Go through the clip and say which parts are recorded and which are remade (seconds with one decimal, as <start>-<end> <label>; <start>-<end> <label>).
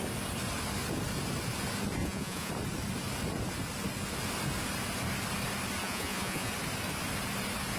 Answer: 0.0-2.0 recorded; 2.0-2.5 remade; 2.5-5.8 recorded; 5.8-6.5 remade; 6.5-7.8 recorded